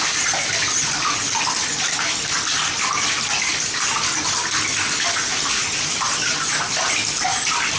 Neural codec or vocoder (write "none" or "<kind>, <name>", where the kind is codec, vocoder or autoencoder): none